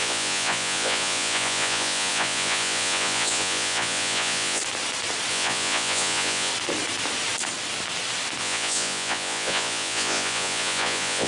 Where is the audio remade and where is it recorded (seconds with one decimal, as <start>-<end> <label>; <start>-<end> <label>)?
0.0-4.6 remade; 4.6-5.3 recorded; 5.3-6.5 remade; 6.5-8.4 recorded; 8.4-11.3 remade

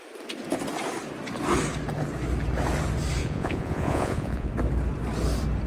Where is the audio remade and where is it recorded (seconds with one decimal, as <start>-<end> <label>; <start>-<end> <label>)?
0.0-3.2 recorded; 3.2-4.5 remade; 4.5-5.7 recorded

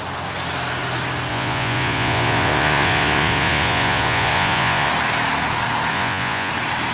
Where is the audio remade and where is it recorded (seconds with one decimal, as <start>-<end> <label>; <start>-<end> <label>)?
0.0-1.3 recorded; 1.3-4.9 remade; 4.9-5.9 recorded; 5.9-6.5 remade; 6.5-6.9 recorded

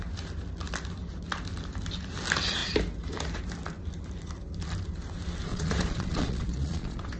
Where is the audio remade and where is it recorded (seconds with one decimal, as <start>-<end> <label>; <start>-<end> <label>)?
0.0-5.5 recorded; 5.5-7.2 remade

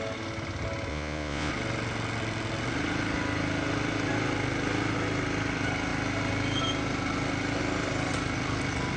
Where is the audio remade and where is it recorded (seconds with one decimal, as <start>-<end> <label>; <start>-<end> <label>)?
0.0-0.9 recorded; 0.9-1.5 remade; 1.5-9.0 recorded